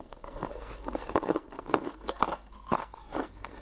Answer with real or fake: fake